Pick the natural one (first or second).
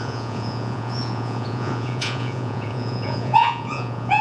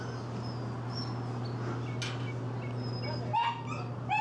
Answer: second